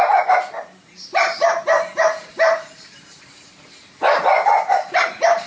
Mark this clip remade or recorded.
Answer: recorded